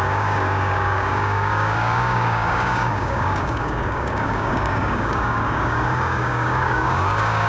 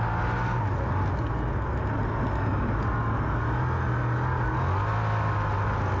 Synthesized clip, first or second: first